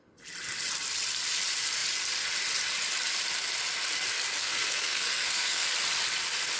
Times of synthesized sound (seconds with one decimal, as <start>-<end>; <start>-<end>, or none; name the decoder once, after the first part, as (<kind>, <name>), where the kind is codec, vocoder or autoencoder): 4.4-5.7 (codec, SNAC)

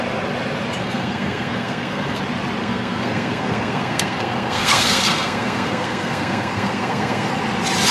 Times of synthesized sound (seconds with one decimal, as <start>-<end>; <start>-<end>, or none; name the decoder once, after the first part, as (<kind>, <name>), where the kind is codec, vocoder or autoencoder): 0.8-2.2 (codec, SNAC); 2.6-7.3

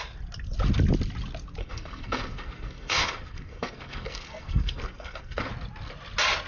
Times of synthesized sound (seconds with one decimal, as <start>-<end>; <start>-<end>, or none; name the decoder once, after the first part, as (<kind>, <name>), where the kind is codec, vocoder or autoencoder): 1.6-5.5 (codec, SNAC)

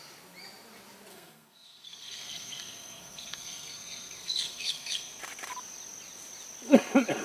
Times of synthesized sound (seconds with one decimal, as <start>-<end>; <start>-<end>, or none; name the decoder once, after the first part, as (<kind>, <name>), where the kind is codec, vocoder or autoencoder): 1.1-5.2 (codec, SNAC)

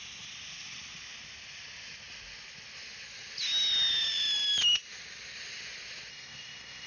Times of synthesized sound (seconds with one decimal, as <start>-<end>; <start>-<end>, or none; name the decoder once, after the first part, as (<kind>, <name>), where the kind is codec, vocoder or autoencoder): 6.1-6.9 (codec, SNAC)

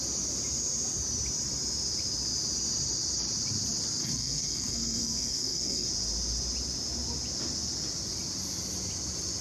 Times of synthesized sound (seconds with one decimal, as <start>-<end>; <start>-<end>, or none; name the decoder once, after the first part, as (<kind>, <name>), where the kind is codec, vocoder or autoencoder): 4.0-5.9 (codec, SNAC)

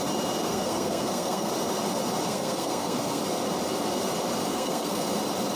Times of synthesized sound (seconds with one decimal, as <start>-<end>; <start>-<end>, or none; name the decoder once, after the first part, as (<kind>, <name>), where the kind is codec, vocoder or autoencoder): 0.5-1.5 (codec, SNAC); 2.3-3.2; 4.5-5.0

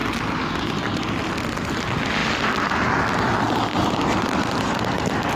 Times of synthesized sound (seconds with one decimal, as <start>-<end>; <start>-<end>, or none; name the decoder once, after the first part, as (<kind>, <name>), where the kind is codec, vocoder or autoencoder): none